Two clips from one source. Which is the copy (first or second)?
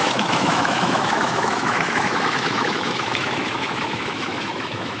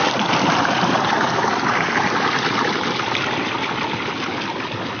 first